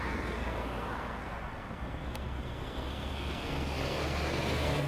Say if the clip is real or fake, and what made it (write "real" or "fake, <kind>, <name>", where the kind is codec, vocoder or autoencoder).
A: fake, codec, SNAC